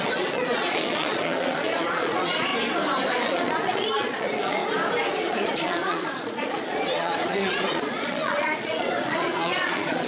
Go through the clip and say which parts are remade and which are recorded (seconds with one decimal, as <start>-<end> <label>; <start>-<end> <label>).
0.0-2.5 remade; 2.5-3.1 recorded; 3.1-4.6 remade; 4.6-5.1 recorded; 5.1-10.1 remade